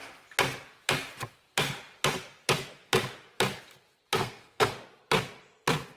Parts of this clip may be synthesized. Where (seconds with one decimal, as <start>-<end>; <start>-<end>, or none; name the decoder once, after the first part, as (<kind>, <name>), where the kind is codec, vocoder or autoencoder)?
4.2-4.7 (codec, SNAC)